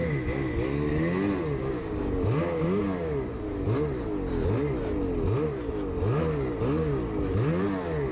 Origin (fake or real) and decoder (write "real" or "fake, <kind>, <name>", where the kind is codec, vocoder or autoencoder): real